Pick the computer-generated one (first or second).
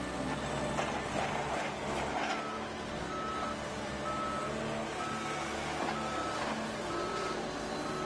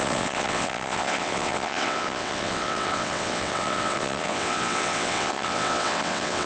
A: second